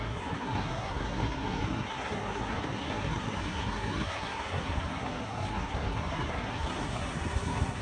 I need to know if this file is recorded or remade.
remade